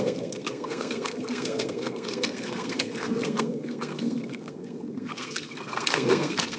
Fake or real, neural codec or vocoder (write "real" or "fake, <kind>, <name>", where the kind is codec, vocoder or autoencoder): fake, codec, SNAC